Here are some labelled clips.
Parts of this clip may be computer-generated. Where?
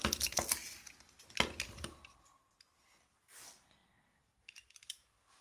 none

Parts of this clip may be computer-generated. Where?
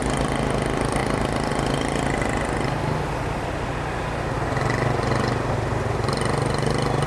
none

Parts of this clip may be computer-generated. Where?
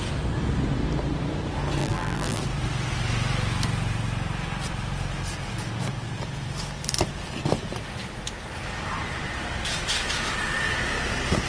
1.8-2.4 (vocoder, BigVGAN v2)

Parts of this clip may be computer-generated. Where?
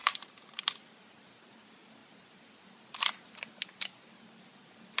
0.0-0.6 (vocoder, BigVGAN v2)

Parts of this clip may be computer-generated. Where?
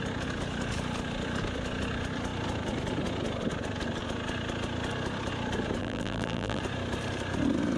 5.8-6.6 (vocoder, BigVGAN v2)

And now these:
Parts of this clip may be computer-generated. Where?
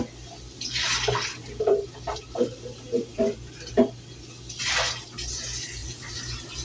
3.1-3.7 (vocoder, BigVGAN v2); 5.8-6.6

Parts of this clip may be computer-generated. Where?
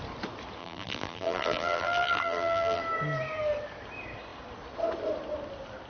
0.6-2.8 (vocoder, BigVGAN v2)